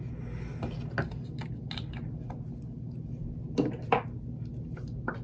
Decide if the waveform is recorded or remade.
recorded